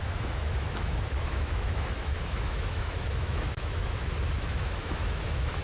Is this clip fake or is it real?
fake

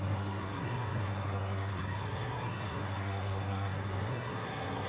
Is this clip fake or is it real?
fake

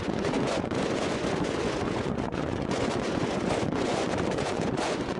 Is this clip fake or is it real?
fake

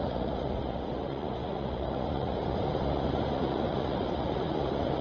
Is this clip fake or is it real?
fake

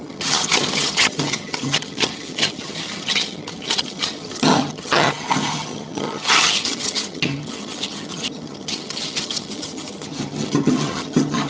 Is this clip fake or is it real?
fake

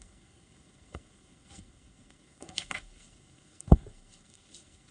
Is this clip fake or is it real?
fake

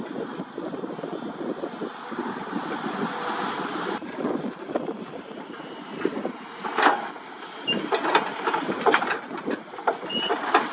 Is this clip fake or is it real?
real